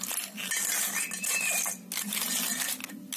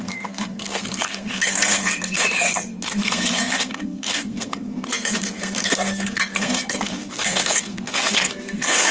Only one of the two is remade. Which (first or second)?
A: second